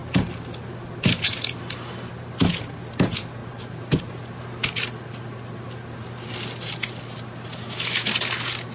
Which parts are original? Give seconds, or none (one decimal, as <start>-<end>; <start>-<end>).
0.0-8.7